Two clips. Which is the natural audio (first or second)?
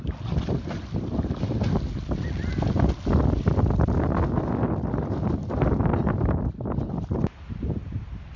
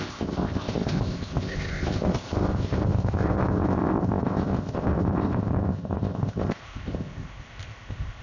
first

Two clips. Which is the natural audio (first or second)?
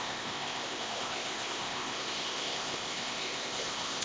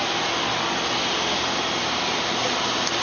second